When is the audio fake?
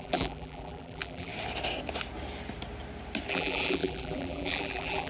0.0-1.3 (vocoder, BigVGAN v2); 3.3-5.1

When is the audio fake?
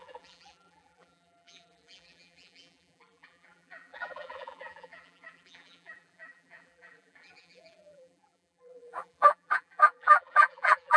0.0-11.0 (vocoder, BigVGAN v2)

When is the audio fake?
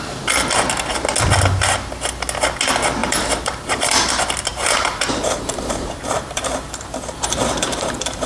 3.0-4.1 (vocoder, BigVGAN v2); 4.5-8.3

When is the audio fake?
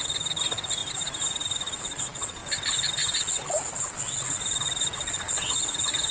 0.8-1.8 (vocoder, BigVGAN v2)